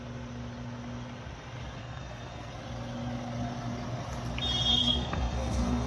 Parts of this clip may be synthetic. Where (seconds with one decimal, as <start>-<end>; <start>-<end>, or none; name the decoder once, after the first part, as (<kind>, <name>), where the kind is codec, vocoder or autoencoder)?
1.8-2.5 (codec, SNAC); 4.7-5.9